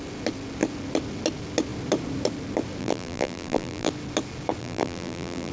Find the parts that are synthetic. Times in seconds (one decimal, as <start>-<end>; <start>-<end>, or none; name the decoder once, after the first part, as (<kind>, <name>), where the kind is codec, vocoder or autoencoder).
2.8-3.9 (vocoder, BigVGAN v2); 4.6-5.5

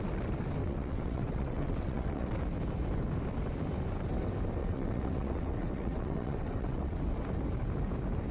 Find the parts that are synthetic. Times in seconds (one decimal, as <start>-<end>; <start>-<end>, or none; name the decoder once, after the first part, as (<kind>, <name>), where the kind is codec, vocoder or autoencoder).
0.6-2.3 (vocoder, WaveNeXt); 4.6-7.0

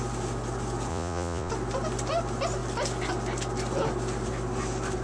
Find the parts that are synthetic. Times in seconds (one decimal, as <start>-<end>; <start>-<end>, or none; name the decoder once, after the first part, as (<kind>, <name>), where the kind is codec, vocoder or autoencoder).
0.9-1.5 (vocoder, Vocos)

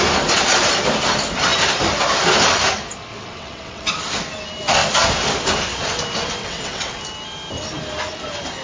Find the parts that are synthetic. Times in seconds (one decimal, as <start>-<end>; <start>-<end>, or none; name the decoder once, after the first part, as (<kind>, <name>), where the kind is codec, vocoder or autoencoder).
3.1-3.9 (vocoder, WaveNeXt); 6.4-7.0

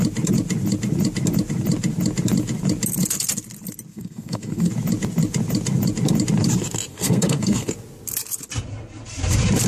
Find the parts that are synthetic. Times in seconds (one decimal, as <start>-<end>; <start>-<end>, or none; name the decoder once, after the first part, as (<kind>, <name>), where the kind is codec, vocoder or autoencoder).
3.9-4.7 (codec, SNAC); 6.9-7.7

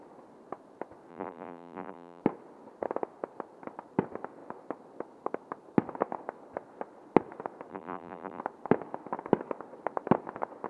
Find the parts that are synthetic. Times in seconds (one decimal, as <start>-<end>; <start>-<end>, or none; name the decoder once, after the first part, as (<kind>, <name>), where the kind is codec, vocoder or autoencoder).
1.1-2.2 (vocoder, BigVGAN v2); 7.7-8.4

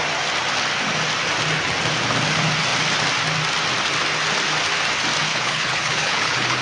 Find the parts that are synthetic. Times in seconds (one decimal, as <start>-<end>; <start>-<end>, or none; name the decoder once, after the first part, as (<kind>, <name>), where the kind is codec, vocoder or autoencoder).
5.3-6.6 (codec, HILCodec)

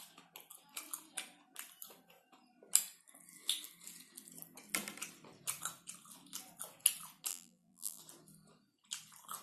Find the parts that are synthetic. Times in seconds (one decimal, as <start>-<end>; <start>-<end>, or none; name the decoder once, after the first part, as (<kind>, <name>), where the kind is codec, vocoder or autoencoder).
7.3-8.0 (vocoder, BigVGAN v2)